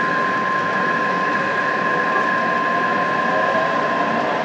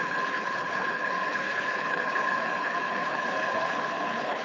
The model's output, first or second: second